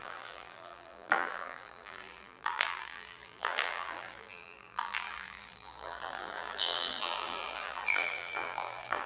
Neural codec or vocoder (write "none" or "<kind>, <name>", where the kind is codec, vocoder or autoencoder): vocoder, BigVGAN v2